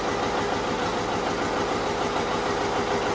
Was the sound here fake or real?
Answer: real